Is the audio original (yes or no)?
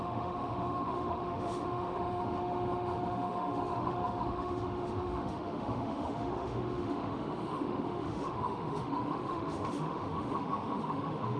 no